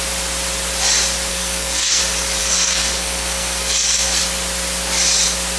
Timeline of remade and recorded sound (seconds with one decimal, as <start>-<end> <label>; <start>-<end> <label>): 0.0-1.3 recorded; 1.3-2.0 remade; 2.0-2.4 recorded; 2.4-4.2 remade; 4.2-5.6 recorded